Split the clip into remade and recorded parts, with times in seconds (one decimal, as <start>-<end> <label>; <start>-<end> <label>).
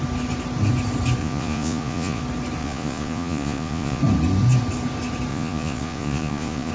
0.0-1.2 recorded; 1.2-2.2 remade; 2.2-2.6 recorded; 2.6-4.0 remade; 4.0-5.3 recorded; 5.3-6.7 remade